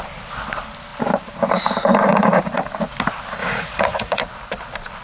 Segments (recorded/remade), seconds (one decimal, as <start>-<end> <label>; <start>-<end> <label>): 0.0-2.1 recorded; 2.1-2.6 remade; 2.6-3.4 recorded; 3.4-4.2 remade; 4.2-5.0 recorded